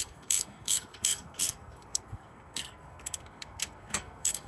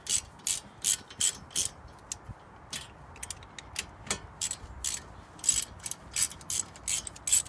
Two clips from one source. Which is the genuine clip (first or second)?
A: second